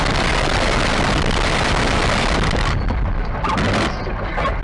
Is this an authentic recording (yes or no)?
yes